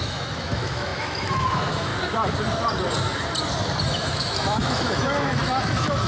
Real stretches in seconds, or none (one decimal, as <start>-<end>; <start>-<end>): 1.9-3.8